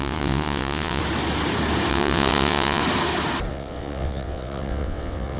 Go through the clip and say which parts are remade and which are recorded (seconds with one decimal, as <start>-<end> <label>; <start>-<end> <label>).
0.0-1.0 remade; 1.0-1.9 recorded; 1.9-2.8 remade; 2.8-3.5 recorded; 3.5-5.4 remade